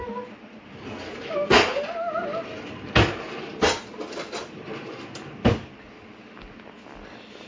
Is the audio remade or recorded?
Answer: recorded